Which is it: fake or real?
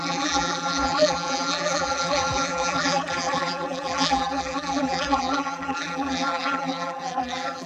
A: fake